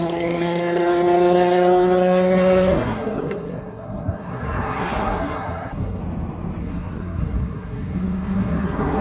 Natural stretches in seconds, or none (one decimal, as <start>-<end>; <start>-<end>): 6.0-6.6